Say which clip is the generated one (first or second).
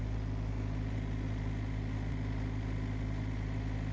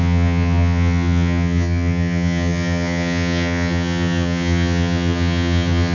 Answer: second